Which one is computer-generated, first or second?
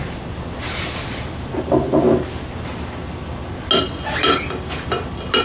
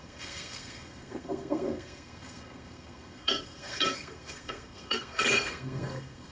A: second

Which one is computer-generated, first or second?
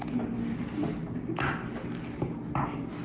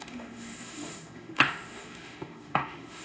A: second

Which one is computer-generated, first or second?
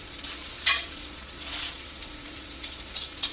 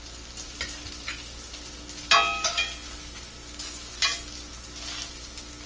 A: first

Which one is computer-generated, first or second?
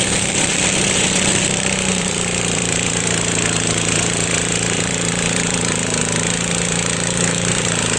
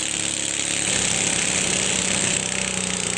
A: first